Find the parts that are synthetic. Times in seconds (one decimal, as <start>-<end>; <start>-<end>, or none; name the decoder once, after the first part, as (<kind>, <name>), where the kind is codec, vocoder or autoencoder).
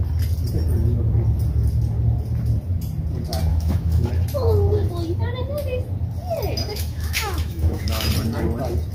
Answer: 3.5-4.1 (autoencoder, DAC-VAE); 6.7-8.1